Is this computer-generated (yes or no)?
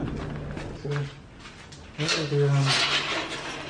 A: no